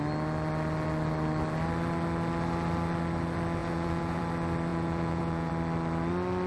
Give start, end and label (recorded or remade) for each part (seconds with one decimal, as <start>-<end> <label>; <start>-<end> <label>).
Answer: 0.0-3.6 recorded; 3.6-4.2 remade; 4.2-4.7 recorded; 4.7-5.5 remade; 5.5-6.5 recorded